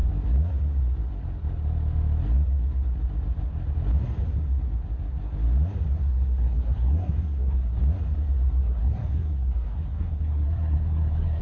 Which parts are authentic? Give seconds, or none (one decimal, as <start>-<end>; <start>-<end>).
0.0-6.0; 7.8-8.6